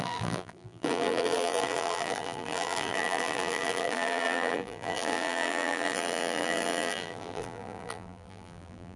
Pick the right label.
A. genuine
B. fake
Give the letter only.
B